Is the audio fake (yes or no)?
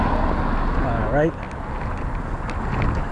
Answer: no